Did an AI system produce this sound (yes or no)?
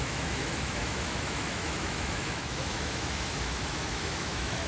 yes